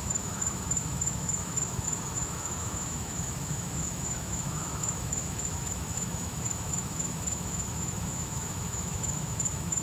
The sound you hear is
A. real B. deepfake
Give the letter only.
B